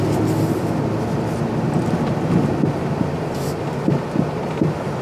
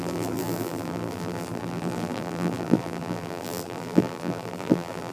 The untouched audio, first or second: first